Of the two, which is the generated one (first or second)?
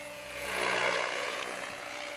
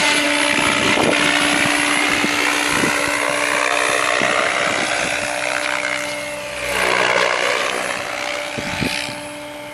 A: first